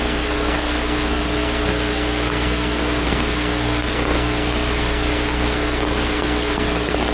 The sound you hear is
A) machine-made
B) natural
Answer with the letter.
A